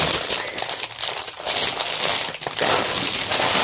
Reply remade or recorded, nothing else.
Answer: recorded